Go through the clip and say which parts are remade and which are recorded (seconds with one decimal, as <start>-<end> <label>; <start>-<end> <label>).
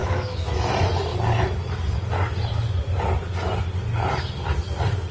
0.0-0.7 remade; 0.7-5.1 recorded